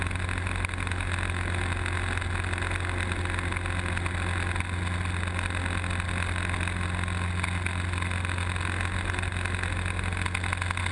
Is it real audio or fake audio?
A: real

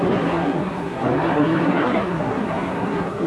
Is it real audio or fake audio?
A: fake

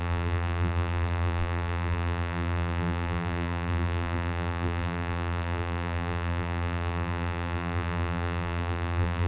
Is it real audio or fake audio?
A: fake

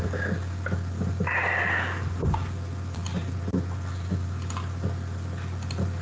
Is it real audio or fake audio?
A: real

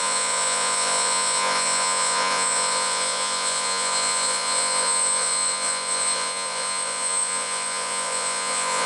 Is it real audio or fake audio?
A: fake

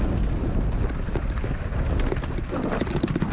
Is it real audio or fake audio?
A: real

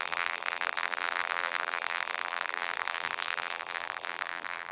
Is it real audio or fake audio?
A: fake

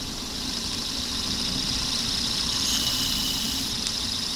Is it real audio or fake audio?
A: real